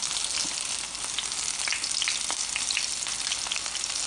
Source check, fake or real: real